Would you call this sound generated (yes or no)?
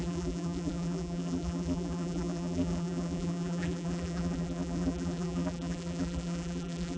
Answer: yes